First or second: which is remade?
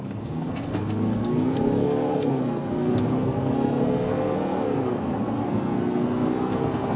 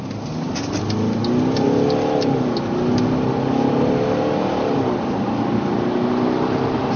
first